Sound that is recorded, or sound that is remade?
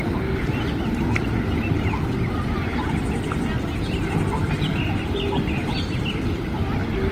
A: recorded